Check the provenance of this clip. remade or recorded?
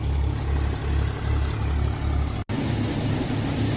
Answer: recorded